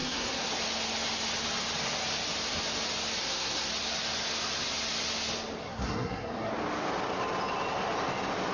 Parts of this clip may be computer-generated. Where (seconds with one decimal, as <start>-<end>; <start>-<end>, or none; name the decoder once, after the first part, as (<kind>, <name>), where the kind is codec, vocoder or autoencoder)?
0.0-0.5 (codec, SNAC); 3.2-3.7; 5.6-6.5